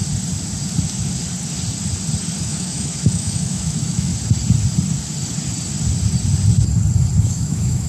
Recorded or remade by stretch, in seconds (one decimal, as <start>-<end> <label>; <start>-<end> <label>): 0.0-2.4 recorded; 2.4-4.1 remade; 4.1-7.2 recorded; 7.2-7.9 remade